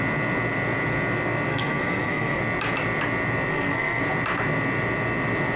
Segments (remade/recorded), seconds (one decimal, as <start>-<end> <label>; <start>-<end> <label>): 0.0-1.5 recorded; 1.5-2.4 remade; 2.4-3.5 recorded; 3.5-4.0 remade; 4.0-5.6 recorded